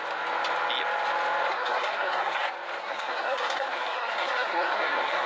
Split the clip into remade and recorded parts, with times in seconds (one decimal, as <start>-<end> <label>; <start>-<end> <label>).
0.0-1.5 recorded; 1.5-2.4 remade; 2.4-2.8 recorded; 2.8-5.3 remade